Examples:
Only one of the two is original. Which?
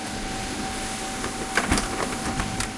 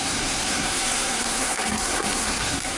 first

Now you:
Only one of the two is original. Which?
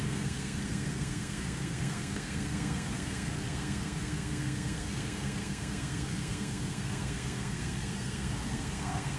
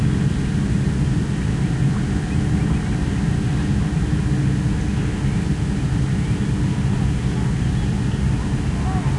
second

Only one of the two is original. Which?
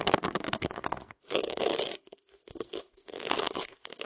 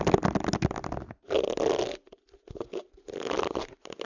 second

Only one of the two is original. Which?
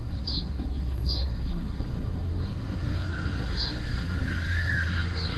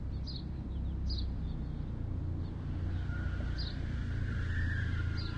second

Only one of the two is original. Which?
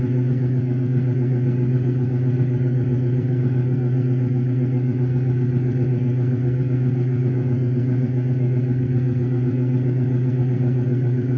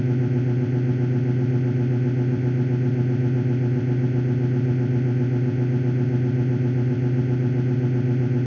second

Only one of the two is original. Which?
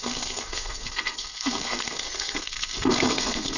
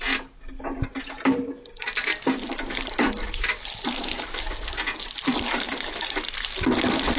second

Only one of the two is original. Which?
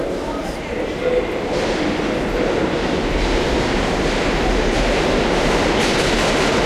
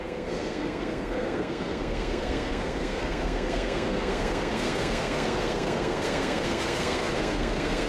first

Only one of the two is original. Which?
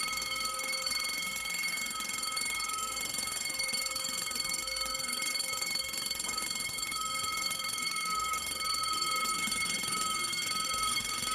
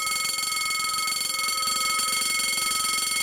second